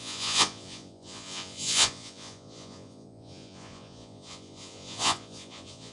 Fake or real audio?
fake